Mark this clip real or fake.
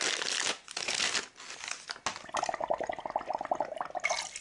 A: real